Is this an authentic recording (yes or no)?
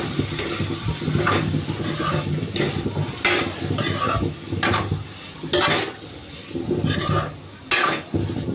yes